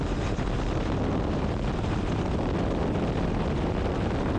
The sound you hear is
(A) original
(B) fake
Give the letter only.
A